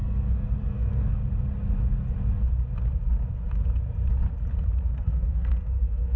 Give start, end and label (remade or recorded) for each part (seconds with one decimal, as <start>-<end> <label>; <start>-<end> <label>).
0.0-1.2 remade; 1.2-4.9 recorded; 4.9-6.2 remade